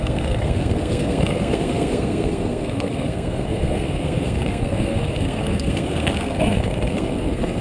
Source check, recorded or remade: remade